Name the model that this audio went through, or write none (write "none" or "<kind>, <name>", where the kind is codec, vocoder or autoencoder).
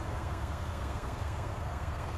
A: codec, SNAC